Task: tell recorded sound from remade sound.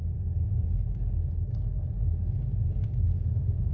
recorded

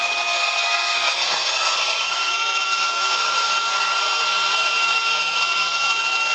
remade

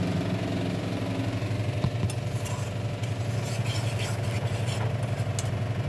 recorded